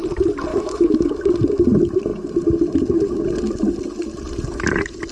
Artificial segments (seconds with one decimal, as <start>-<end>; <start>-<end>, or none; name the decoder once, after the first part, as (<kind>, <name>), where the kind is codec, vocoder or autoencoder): 0.5-1.1 (autoencoder, DAC-VAE)